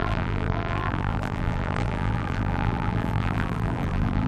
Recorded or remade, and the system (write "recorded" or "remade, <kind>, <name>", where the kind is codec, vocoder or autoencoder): remade, vocoder, BigVGAN v2